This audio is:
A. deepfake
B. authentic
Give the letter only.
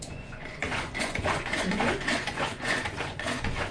A